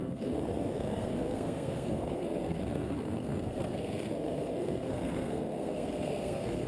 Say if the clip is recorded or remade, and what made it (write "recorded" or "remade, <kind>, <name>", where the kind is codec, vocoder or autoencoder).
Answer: remade, codec, SNAC